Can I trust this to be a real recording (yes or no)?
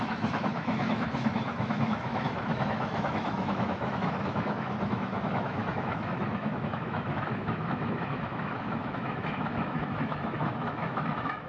no